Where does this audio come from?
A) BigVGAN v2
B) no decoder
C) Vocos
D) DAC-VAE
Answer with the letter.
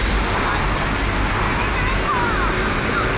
B